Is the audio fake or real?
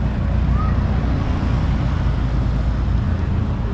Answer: real